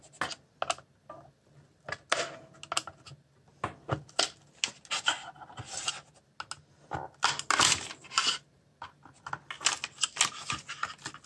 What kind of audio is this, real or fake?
real